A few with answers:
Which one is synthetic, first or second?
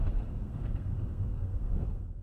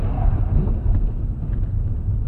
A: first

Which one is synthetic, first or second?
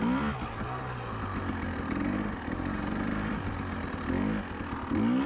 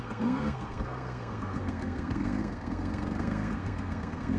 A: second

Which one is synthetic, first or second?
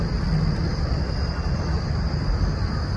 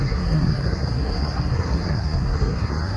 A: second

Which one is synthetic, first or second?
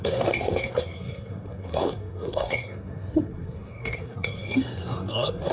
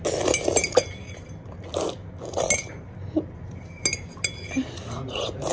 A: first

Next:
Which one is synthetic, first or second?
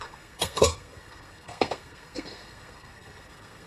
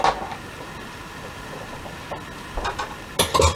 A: first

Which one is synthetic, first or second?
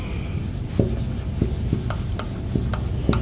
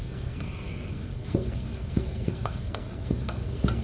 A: second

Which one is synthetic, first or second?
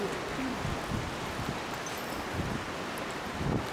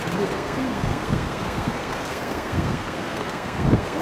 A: second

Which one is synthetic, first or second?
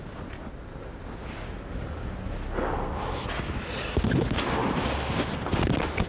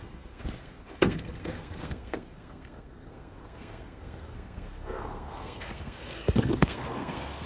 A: second